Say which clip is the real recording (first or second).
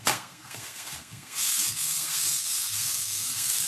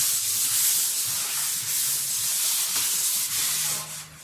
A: second